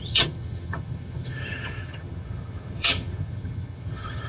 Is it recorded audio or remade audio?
remade